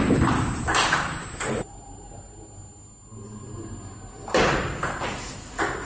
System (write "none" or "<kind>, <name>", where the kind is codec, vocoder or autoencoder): none